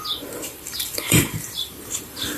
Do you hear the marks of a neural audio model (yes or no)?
yes